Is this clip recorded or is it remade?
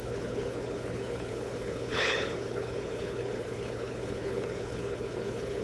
remade